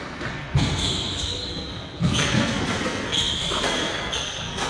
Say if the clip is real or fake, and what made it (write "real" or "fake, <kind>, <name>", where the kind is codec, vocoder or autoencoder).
fake, codec, SNAC